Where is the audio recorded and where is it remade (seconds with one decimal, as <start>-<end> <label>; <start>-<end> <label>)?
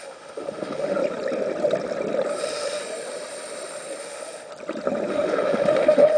0.0-1.0 remade; 1.0-2.4 recorded; 2.4-2.8 remade; 2.8-4.0 recorded; 4.0-4.5 remade; 4.5-5.1 recorded; 5.1-6.2 remade